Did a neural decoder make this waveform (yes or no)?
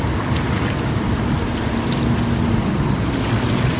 no